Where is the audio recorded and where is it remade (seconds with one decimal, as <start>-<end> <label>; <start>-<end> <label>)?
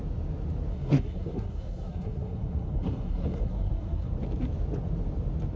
0.0-0.7 recorded; 0.7-4.1 remade; 4.1-5.6 recorded